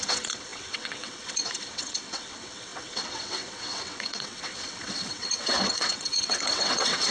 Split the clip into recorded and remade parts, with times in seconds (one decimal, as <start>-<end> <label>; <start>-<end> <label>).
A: 0.0-7.1 remade